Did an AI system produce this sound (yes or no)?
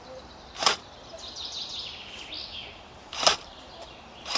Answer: no